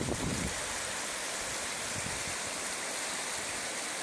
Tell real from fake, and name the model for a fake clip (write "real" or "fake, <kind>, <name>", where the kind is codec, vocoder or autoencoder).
real